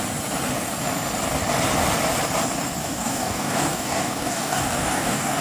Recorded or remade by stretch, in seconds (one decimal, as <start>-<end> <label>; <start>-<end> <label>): 0.0-2.8 recorded; 2.8-5.4 remade